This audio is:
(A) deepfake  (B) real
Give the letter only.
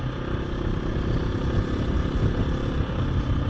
B